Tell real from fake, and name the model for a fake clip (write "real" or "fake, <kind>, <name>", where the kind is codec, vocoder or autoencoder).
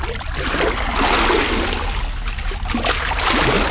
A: real